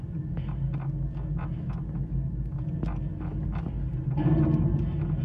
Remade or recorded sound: recorded